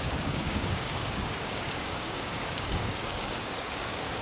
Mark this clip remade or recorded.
remade